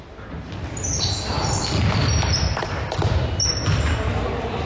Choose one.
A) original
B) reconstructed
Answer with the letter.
A